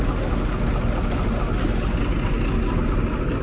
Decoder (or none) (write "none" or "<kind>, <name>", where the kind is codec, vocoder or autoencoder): none